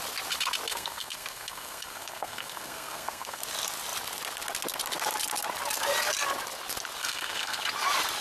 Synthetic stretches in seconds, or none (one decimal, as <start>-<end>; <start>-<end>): 0.7-3.4; 7.0-7.6